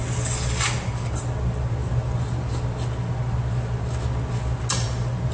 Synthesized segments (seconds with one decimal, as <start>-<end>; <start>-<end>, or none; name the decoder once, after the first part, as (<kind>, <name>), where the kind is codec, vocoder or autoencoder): none